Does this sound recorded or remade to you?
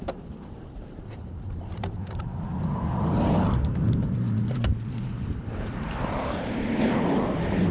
remade